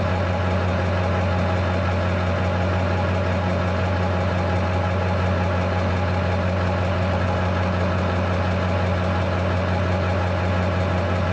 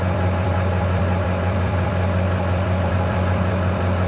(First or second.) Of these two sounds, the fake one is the second